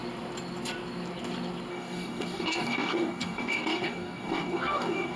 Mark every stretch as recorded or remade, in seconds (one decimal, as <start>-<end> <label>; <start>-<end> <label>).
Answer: 0.0-1.7 recorded; 1.7-5.2 remade

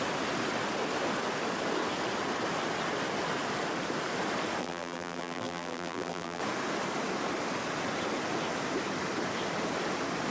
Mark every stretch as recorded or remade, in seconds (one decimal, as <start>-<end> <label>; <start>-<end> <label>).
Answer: 0.0-4.6 recorded; 4.6-6.4 remade; 6.4-10.3 recorded

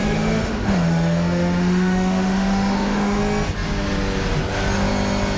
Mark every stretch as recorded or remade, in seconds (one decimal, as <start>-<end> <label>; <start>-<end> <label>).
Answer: 0.0-3.2 remade; 3.2-5.4 recorded

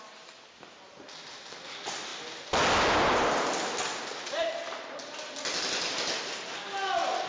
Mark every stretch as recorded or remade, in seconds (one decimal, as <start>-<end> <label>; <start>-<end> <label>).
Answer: 0.0-7.3 recorded

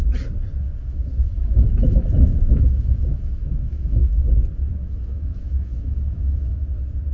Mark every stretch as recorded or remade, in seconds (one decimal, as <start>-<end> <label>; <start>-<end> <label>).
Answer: 0.0-0.8 recorded; 0.8-4.3 remade; 4.3-4.7 recorded; 4.7-6.6 remade; 6.6-7.1 recorded

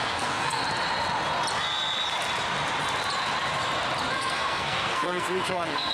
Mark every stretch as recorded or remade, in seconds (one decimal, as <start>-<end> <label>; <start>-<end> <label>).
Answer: 0.0-0.6 remade; 0.6-4.1 recorded; 4.1-5.9 remade

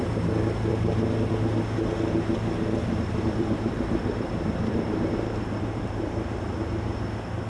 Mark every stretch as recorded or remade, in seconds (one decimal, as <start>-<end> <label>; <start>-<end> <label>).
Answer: 0.0-2.8 recorded; 2.8-6.1 remade; 6.1-7.5 recorded

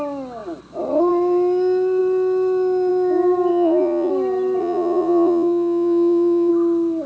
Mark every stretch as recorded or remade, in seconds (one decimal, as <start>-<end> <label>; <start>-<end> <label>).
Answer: 0.0-3.5 recorded; 3.5-4.1 remade; 4.1-4.6 recorded; 4.6-6.5 remade; 6.5-7.1 recorded